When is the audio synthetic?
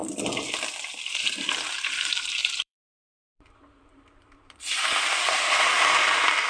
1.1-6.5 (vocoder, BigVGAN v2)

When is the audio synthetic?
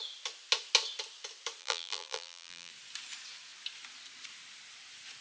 1.6-2.7 (vocoder, BigVGAN v2)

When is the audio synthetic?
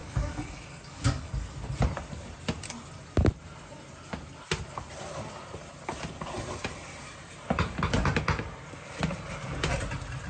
0.0-1.3 (codec, DAC)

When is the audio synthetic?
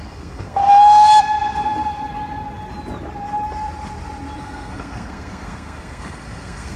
0.0-0.6 (codec, SNAC); 4.4-6.8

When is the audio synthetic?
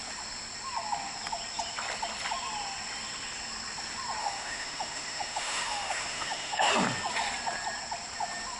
4.2-6.7 (autoencoder, DAC-VAE)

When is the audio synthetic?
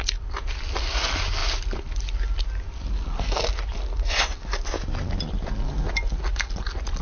none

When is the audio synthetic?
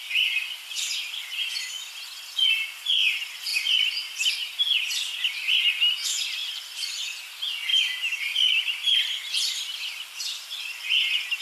6.4-7.0 (vocoder, BigVGAN v2)